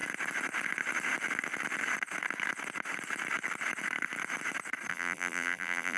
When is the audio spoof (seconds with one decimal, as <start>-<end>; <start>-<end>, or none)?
4.9-6.0